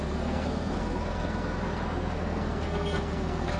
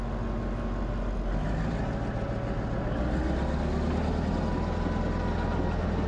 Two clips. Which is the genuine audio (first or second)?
second